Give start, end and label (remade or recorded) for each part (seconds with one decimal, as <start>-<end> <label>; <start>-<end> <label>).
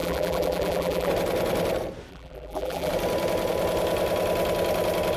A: 0.0-1.1 remade; 1.1-2.1 recorded; 2.1-2.9 remade; 2.9-5.2 recorded